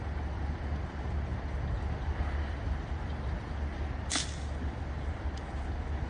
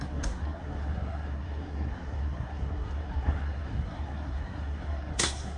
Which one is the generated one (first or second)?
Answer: second